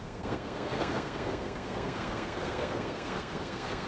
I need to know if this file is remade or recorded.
remade